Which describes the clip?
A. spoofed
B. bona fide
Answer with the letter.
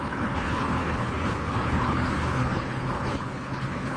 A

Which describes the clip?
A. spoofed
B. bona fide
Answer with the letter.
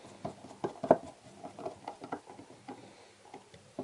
B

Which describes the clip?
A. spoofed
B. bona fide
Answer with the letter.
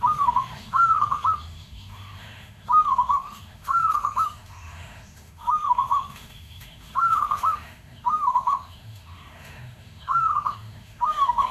A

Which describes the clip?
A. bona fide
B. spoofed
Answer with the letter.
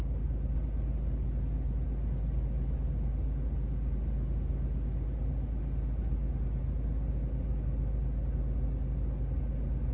A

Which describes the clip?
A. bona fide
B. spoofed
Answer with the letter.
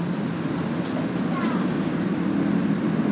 A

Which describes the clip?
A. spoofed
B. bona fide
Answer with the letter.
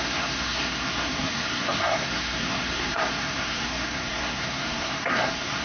A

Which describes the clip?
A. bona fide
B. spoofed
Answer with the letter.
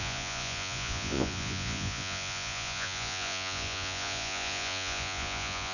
B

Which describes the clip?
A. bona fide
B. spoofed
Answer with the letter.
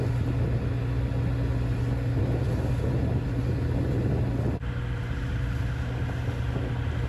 A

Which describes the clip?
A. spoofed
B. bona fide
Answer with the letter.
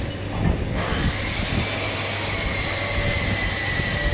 B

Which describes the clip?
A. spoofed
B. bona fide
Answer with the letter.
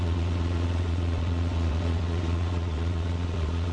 A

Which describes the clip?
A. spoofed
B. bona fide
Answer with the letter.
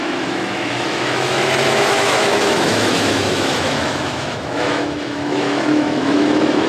A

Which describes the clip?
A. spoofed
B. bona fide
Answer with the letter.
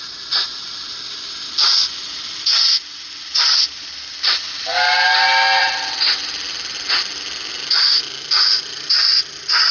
B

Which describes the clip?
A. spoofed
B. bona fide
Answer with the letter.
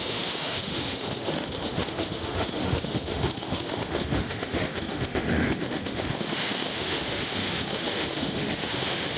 A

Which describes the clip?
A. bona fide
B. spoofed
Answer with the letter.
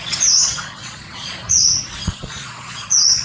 B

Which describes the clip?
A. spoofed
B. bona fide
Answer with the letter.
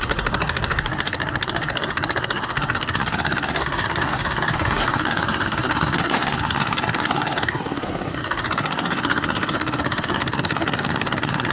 A